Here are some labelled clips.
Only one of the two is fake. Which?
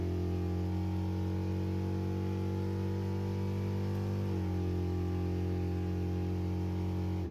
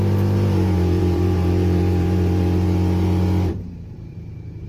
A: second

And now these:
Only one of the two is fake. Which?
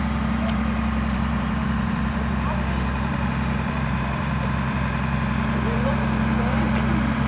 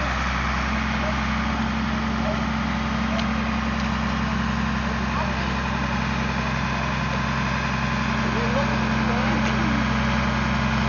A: first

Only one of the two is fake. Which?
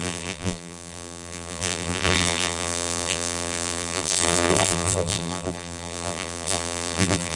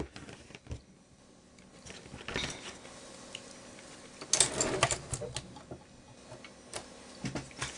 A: first